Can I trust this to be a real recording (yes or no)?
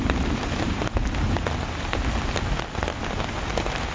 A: yes